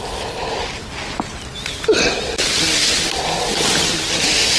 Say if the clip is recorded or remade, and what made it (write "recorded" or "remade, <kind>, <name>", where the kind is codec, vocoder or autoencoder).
recorded